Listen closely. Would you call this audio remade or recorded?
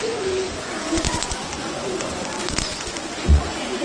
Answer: remade